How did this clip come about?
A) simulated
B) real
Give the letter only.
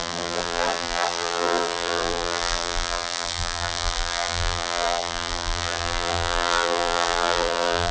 A